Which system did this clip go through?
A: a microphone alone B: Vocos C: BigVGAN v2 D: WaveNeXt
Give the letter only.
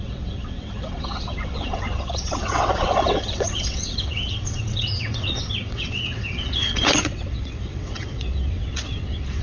D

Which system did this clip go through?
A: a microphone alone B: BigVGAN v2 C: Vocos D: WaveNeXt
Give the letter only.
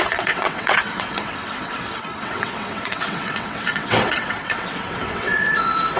D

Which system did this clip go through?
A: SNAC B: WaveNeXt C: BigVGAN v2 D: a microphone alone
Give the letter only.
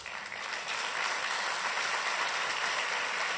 D